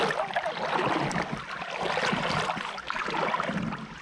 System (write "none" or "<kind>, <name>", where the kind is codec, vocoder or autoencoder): none